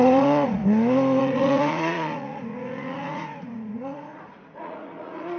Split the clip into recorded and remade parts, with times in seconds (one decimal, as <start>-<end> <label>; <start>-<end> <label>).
0.0-0.6 remade; 0.6-1.2 recorded; 1.2-5.4 remade